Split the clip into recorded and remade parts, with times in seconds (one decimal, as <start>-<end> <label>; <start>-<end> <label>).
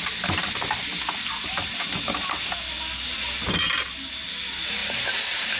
0.0-4.8 recorded; 4.8-5.6 remade